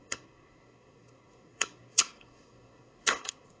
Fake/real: fake